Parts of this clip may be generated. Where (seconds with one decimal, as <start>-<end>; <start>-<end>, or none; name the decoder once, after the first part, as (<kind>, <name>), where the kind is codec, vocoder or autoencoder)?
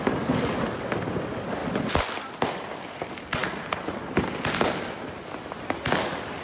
none